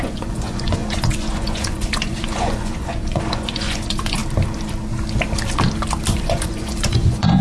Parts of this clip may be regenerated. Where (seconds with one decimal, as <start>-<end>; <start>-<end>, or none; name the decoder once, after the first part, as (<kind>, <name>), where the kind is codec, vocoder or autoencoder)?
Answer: 0.0-4.2 (vocoder, Vocos); 6.1-7.4